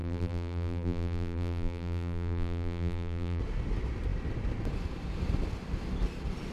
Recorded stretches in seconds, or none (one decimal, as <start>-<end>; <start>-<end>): 3.4-6.5